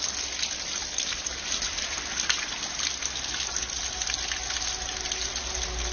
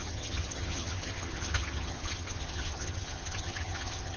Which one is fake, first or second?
second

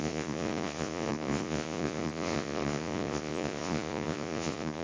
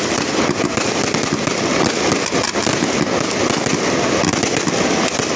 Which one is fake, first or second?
first